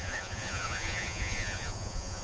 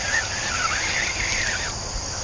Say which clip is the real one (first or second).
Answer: second